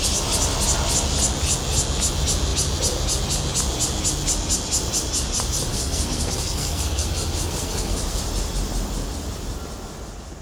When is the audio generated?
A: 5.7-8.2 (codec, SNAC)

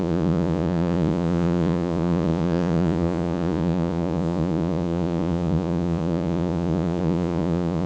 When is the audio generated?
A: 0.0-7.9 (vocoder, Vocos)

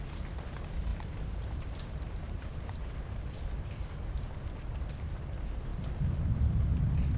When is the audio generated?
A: 0.9-5.1 (vocoder, BigVGAN v2)

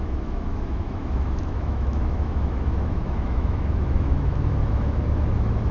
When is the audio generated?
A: 0.0-5.7 (autoencoder, DAC-VAE)

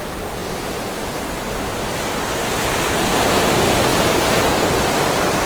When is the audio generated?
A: 3.9-4.8 (vocoder, BigVGAN v2)

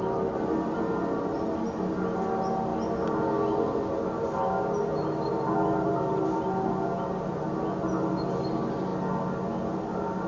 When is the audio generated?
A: 0.0-2.7 (vocoder, BigVGAN v2); 4.9-8.9; 9.7-10.3

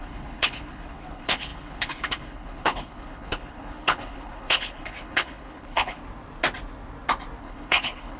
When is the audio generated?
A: 0.0-6.0 (codec, HILCodec); 7.4-8.2

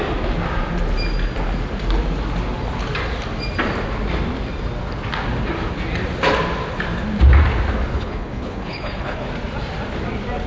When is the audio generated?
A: 7.9-9.3 (codec, HILCodec)